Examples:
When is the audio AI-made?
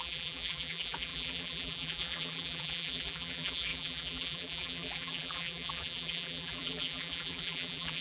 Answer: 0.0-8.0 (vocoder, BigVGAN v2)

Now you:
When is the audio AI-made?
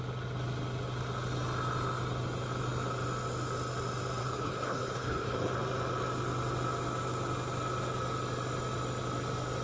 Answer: 4.2-5.5 (codec, HILCodec)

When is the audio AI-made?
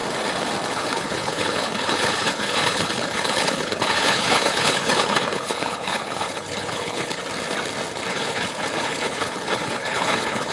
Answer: 0.7-7.2 (codec, HILCodec); 8.1-10.5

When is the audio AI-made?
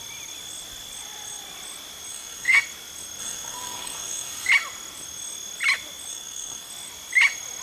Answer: 2.1-2.6 (codec, SNAC); 3.2-4.5; 6.1-6.7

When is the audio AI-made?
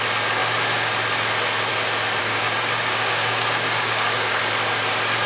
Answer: 2.2-4.4 (codec, DAC)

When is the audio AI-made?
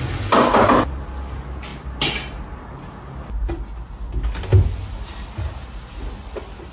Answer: none